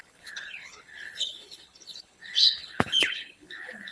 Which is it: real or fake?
fake